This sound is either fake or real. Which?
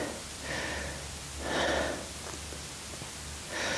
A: real